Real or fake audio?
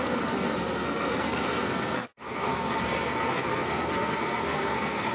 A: fake